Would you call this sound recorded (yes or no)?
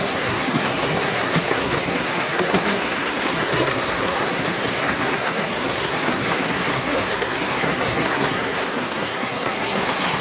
no